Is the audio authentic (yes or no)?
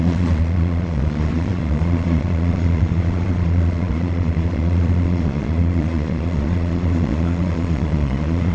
no